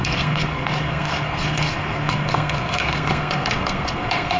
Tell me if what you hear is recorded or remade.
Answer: remade